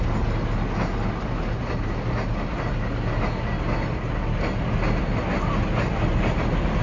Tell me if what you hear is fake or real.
real